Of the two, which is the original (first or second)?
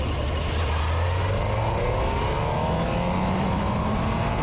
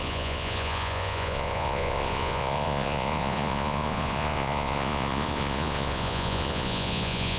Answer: first